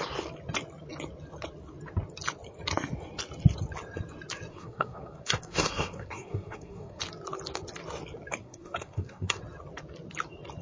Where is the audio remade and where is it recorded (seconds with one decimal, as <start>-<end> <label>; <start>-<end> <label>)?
0.0-4.5 recorded; 4.5-7.0 remade; 7.0-8.4 recorded; 8.4-9.4 remade; 9.4-10.6 recorded